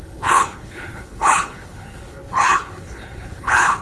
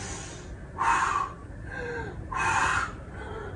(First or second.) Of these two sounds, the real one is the second